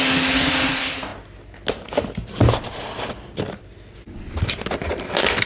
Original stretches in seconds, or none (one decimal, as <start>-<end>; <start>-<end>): 0.0-5.5